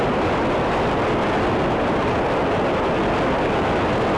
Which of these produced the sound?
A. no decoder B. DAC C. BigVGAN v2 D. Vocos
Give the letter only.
A